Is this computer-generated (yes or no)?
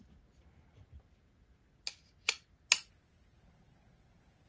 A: no